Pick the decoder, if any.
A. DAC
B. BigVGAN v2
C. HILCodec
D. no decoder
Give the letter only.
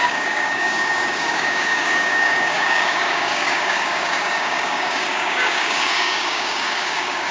A